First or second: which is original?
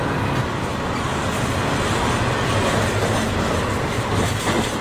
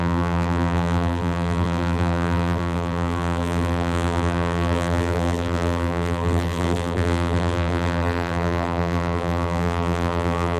first